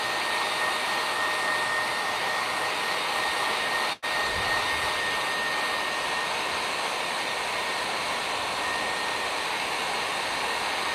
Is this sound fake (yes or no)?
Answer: no